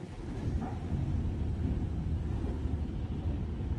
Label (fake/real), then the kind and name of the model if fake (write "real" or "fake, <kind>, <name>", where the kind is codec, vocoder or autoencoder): real